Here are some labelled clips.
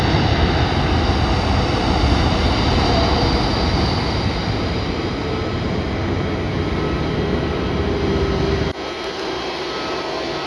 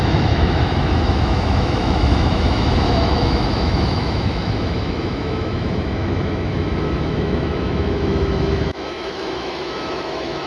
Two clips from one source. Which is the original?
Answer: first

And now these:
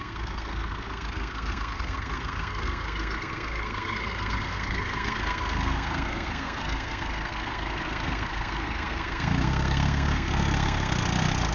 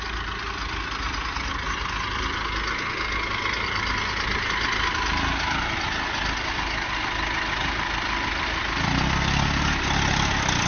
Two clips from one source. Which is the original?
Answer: second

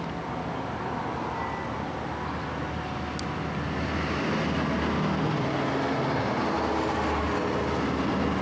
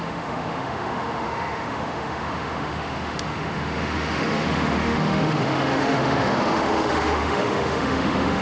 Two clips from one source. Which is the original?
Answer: first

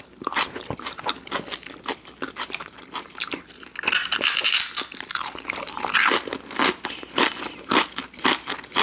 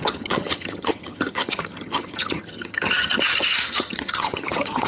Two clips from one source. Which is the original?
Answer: first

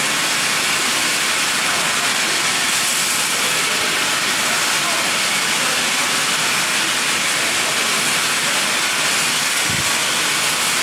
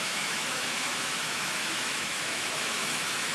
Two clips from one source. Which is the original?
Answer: first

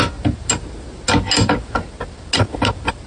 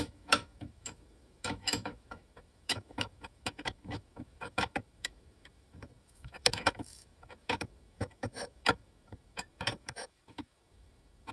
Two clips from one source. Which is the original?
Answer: first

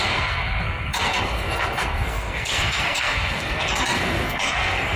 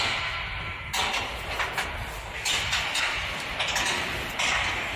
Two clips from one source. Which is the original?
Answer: second